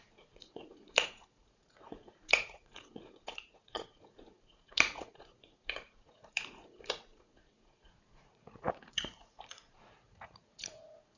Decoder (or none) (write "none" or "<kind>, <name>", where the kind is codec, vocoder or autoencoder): vocoder, Vocos